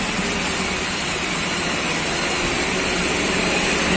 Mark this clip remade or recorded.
recorded